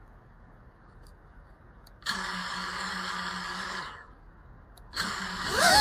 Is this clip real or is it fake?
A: fake